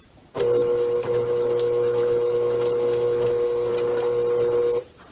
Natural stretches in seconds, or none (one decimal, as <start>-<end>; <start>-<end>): 0.0-0.6; 3.7-5.1